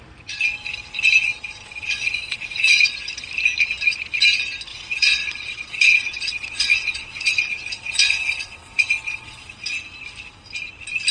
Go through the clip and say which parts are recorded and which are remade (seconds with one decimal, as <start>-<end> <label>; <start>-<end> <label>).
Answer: 0.0-1.2 recorded; 1.2-3.1 remade; 3.1-4.7 recorded; 4.7-9.7 remade; 9.7-11.1 recorded